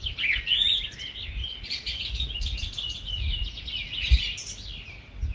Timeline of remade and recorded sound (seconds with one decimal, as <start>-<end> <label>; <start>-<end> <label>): 0.0-1.4 recorded; 1.4-4.2 remade; 4.2-5.3 recorded